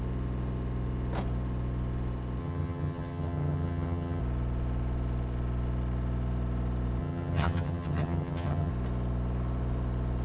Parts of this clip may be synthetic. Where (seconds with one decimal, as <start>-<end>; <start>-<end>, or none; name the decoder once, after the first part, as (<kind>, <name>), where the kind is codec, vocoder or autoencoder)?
2.4-4.2 (vocoder, HiFi-GAN); 7.0-8.7